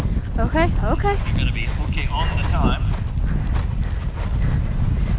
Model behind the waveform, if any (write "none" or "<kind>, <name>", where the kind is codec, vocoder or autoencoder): none